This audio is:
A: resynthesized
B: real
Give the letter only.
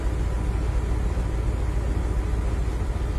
B